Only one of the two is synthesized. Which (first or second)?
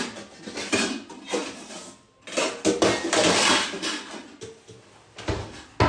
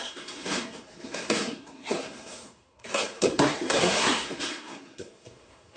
second